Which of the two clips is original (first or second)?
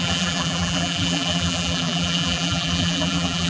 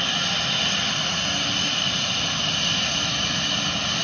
second